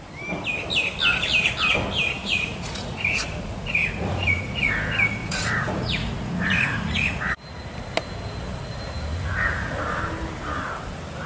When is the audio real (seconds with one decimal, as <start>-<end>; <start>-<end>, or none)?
0.0-2.2; 4.7-5.2; 7.2-9.1; 9.8-11.3